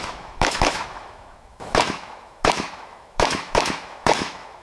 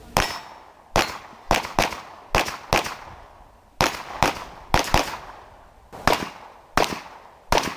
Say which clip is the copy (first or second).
first